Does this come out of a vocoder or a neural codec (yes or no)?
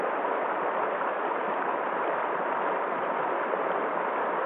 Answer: no